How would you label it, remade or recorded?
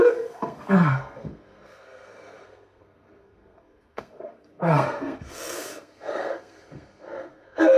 remade